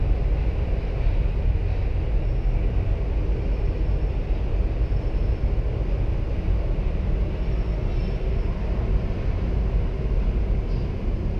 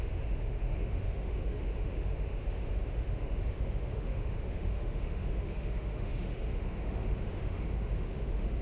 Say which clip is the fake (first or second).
second